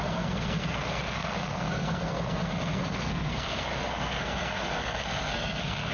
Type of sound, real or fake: fake